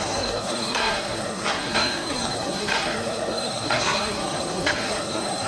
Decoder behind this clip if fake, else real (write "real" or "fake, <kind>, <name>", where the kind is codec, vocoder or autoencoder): fake, codec, SNAC